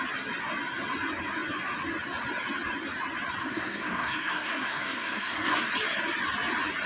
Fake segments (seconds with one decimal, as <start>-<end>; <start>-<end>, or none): 3.4-5.7